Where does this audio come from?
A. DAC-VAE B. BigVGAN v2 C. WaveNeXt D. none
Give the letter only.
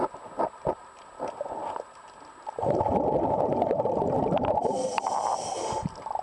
D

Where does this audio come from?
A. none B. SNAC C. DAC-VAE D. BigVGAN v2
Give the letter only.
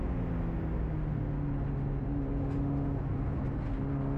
A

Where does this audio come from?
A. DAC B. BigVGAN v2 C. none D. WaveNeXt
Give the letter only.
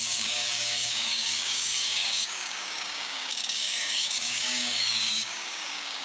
A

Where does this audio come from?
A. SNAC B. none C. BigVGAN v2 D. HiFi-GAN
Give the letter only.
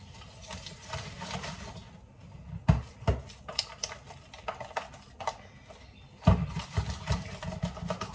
B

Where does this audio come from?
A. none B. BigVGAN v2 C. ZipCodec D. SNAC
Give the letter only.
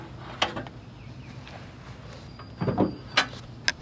A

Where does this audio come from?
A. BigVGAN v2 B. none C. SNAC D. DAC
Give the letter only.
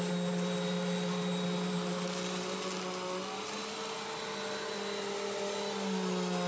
B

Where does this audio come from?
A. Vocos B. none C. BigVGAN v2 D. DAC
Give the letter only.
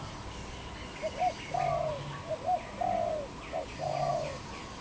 B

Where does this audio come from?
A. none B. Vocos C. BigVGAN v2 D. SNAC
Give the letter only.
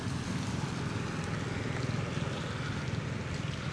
A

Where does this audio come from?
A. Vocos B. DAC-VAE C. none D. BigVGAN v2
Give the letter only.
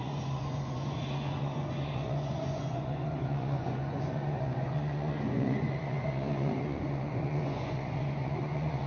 A